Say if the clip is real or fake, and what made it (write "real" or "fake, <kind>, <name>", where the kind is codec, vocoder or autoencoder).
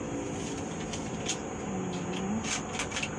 real